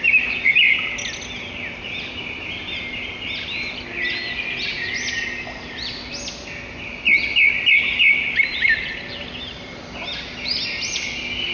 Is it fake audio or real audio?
real